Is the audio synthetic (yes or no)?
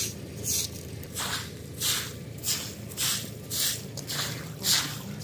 no